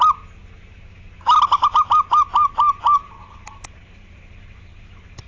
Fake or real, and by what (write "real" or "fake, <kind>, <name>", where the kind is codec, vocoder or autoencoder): real